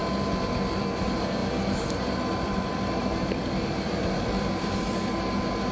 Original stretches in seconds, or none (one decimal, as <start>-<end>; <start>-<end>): 0.0-1.4; 4.8-5.7